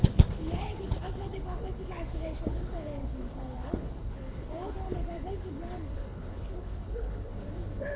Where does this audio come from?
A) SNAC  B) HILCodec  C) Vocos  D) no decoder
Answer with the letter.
B